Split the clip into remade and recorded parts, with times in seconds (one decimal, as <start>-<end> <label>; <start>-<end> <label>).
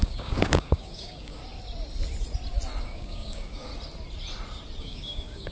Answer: 0.0-1.4 remade; 1.4-2.8 recorded; 2.8-3.7 remade; 3.7-4.8 recorded; 4.8-5.5 remade